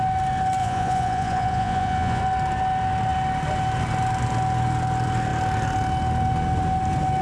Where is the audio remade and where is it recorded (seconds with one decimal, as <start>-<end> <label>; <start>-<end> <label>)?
0.0-0.6 recorded; 0.6-2.2 remade; 2.2-7.2 recorded